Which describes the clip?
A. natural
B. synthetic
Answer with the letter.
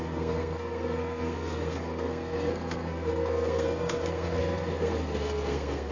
B